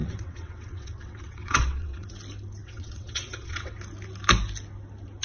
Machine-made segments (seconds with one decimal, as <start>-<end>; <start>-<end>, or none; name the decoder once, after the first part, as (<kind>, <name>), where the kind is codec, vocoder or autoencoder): 0.0-2.1 (vocoder, WaveNeXt); 2.6-3.8